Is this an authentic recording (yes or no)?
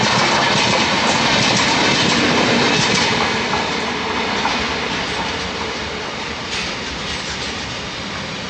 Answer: yes